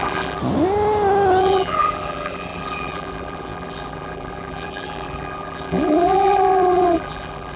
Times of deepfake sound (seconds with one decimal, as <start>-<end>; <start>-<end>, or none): 0.0-0.4; 1.4-7.6

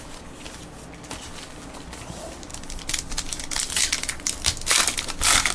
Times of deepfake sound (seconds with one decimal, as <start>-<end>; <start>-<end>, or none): 2.5-3.7

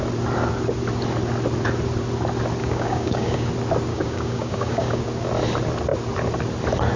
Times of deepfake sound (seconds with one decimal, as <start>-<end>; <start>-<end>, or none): 2.6-3.5; 3.9-5.0

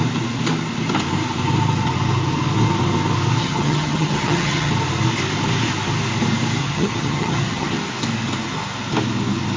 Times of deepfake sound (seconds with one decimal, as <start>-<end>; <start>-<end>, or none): 3.4-4.7; 6.6-7.7

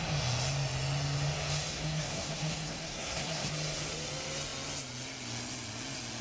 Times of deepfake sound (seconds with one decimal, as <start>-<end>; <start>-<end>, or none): 1.7-3.5

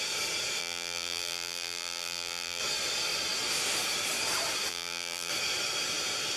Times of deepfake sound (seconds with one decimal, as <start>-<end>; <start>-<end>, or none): 0.6-2.6; 4.7-5.3

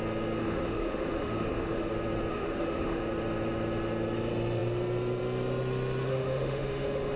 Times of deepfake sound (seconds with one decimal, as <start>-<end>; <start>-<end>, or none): 0.4-1.9; 2.3-3.0; 6.1-7.2